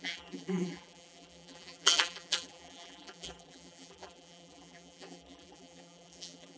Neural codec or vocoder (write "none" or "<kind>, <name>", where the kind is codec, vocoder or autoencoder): vocoder, BigVGAN v2